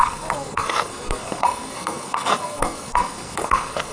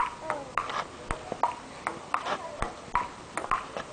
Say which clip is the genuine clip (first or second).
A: second